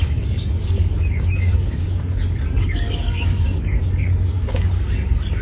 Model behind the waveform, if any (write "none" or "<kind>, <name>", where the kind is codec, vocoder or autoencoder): codec, DAC